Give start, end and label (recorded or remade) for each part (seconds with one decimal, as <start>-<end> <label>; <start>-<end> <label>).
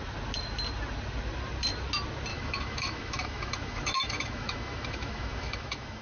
0.0-2.3 recorded; 2.3-6.0 remade